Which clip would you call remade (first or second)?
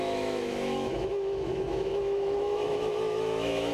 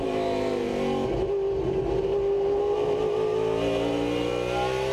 first